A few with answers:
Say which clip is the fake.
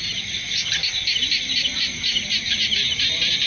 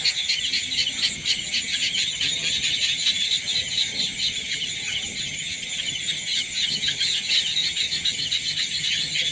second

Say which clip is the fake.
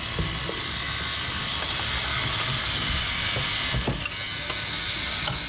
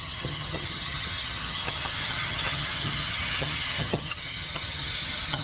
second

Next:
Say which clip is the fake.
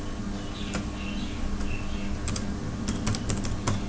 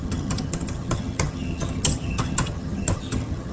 second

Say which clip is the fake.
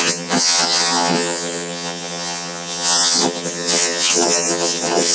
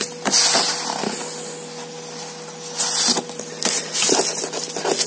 first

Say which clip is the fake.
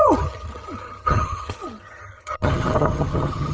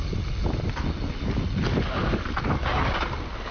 first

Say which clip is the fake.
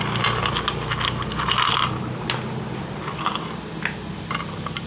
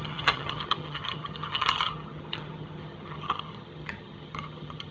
second